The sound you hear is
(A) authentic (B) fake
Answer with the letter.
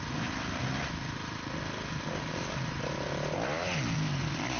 A